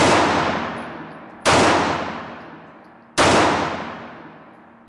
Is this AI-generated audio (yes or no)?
no